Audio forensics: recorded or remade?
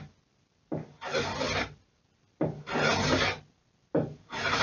recorded